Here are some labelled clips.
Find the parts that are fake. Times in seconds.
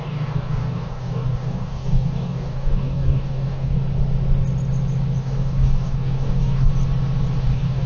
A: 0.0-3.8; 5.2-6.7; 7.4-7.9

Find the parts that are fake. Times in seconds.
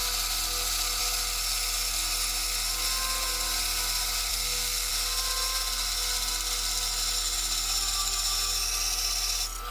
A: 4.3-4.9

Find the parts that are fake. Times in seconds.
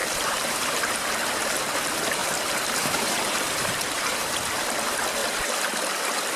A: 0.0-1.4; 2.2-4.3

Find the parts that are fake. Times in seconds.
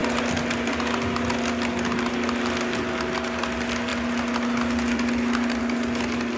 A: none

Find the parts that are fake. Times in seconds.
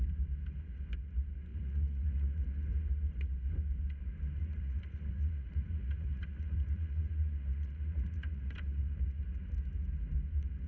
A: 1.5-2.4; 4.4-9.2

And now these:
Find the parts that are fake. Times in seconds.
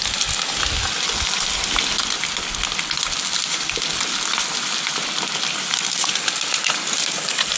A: 2.3-6.0; 6.5-7.6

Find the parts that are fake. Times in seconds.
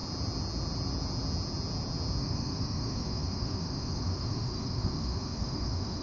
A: 2.2-6.0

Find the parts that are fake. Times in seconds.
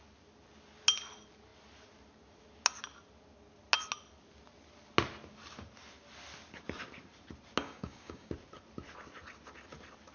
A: 7.6-8.3